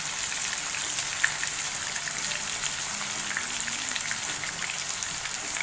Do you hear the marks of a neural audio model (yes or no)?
no